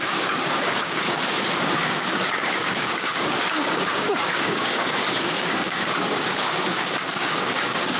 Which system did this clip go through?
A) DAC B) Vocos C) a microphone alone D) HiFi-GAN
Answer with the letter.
A